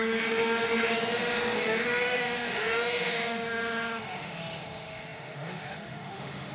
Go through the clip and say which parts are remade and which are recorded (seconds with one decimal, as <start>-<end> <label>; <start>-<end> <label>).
0.0-6.5 remade